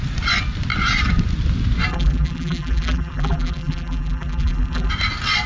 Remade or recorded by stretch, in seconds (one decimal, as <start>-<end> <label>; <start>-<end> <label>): 0.0-1.9 recorded; 1.9-4.9 remade; 4.9-5.5 recorded